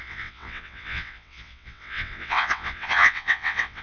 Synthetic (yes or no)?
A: yes